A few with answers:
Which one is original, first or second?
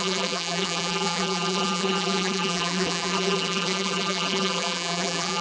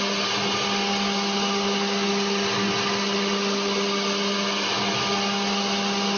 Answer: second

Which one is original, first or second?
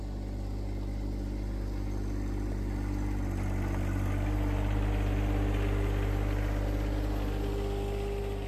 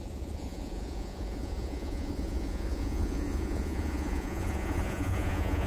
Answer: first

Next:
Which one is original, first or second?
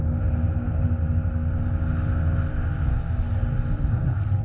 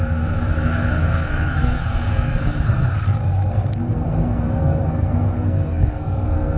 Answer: first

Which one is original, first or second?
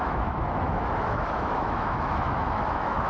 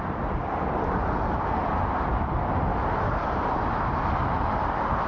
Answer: second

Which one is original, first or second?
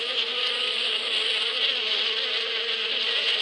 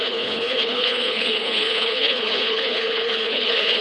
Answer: first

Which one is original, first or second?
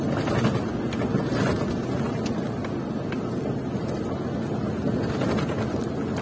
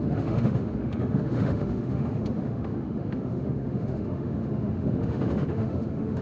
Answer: first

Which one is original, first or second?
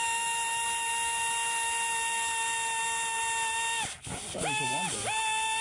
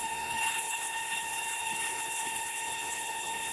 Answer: first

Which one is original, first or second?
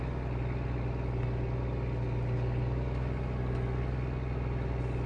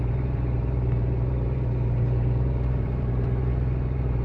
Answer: first